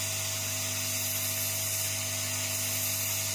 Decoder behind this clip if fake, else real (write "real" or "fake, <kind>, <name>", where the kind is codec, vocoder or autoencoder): real